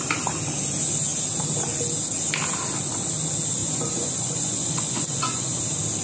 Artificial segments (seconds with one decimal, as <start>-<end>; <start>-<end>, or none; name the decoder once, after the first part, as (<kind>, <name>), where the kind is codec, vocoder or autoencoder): 3.6-5.6 (vocoder, Vocos)